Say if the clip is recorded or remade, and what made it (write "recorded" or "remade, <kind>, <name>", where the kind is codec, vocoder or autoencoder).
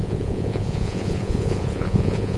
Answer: remade, vocoder, Vocos